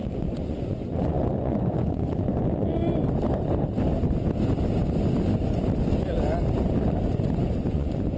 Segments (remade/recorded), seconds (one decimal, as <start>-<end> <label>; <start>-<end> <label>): 0.0-2.8 remade; 2.8-7.7 recorded; 7.7-8.2 remade